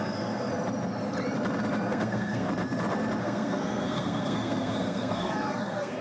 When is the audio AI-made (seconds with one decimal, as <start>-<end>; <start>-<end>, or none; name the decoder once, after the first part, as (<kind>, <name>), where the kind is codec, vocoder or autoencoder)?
0.0-0.5 (codec, SNAC); 1.9-2.5; 3.2-6.0

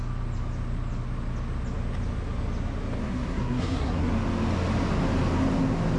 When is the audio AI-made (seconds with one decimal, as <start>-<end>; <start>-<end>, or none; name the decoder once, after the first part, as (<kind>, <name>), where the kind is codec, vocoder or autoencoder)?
3.0-4.1 (codec, SNAC)

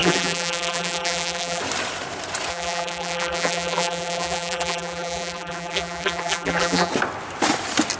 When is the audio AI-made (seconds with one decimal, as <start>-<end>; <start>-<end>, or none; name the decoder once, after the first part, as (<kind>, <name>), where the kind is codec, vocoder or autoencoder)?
0.0-1.6 (vocoder, BigVGAN v2); 2.5-6.9

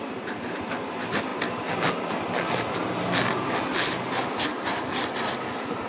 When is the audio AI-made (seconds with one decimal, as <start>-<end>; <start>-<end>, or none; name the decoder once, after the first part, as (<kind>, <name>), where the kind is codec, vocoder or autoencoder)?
none

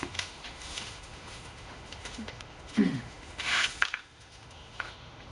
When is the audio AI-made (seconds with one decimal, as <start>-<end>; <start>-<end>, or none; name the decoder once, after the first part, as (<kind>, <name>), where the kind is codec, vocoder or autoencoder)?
0.0-5.3 (autoencoder, DAC-VAE)

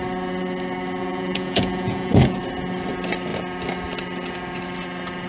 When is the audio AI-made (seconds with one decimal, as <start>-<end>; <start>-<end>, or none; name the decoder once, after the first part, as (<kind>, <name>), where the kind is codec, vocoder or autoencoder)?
1.0-2.4 (vocoder, Vocos)